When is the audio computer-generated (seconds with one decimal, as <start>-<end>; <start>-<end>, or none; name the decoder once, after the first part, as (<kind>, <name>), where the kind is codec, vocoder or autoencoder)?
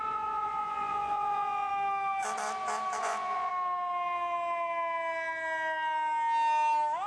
0.0-1.7 (vocoder, Vocos); 3.0-3.5